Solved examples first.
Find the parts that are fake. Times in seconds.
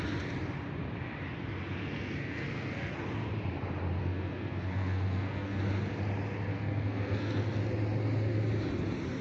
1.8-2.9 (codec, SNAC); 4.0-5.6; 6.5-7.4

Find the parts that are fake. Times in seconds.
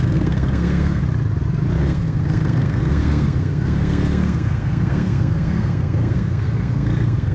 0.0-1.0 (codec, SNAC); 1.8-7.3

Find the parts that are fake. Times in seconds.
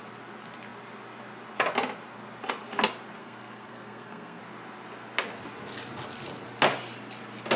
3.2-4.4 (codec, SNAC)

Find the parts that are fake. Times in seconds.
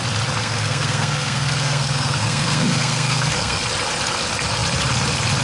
0.4-3.6 (codec, SNAC)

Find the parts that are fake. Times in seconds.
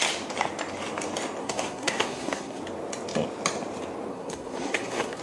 1.4-2.6 (codec, SNAC); 4.1-5.2